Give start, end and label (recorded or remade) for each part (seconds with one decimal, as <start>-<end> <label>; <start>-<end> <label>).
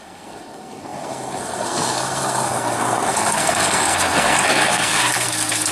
0.0-5.7 remade